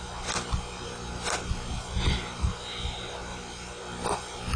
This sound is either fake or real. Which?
real